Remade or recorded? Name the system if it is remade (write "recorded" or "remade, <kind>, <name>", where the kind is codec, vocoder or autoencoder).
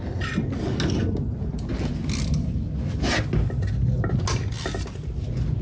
recorded